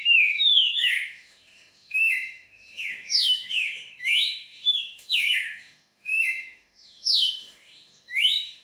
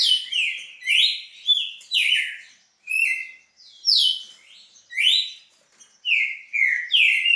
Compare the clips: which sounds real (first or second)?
second